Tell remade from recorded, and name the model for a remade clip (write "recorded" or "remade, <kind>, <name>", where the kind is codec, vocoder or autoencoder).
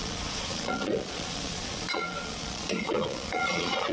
remade, vocoder, Vocos